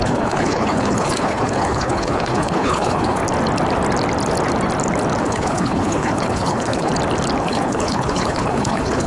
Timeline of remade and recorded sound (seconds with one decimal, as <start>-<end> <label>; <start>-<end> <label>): 0.0-3.2 remade; 3.2-5.2 recorded; 5.2-6.9 remade; 6.9-7.4 recorded; 7.4-9.1 remade